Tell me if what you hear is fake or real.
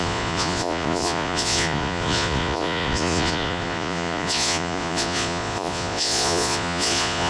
fake